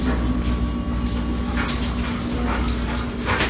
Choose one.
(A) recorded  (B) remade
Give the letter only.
A